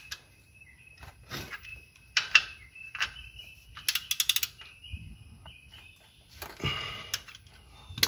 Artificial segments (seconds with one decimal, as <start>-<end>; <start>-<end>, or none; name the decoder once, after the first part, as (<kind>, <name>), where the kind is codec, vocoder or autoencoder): 1.7-3.7 (vocoder, BigVGAN v2)